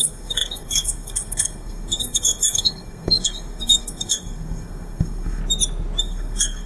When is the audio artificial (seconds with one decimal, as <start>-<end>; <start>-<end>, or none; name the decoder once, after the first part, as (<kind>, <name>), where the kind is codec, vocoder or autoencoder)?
0.0-5.4 (codec, SNAC); 6.0-6.7